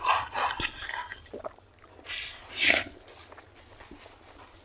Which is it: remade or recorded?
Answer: recorded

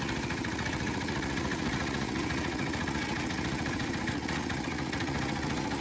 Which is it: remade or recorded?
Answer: remade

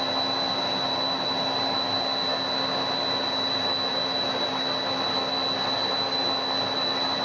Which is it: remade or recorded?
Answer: recorded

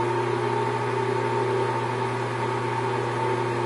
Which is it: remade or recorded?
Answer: recorded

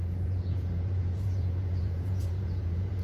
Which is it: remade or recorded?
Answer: remade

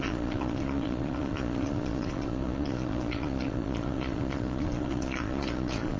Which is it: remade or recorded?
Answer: remade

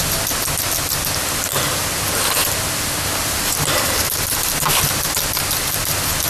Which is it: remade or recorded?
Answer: recorded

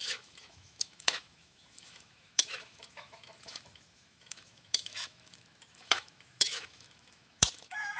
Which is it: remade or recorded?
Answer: remade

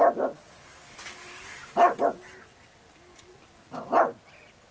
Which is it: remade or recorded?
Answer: recorded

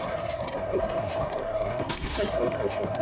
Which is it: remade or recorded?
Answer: remade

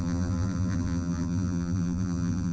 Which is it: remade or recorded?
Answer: remade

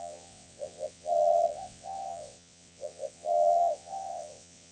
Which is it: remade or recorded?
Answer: remade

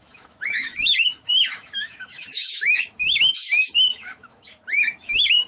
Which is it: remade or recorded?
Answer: remade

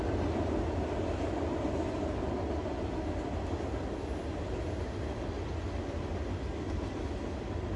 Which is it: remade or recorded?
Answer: recorded